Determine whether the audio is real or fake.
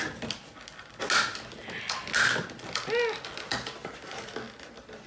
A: real